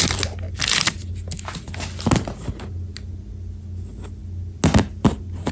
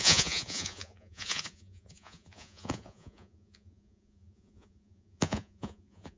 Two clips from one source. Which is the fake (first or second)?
second